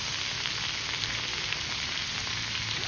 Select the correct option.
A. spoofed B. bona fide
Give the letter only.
B